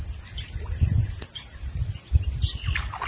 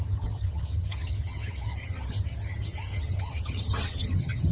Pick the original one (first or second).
first